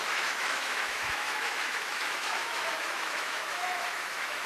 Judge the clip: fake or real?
fake